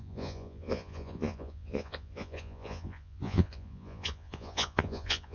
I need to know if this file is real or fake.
fake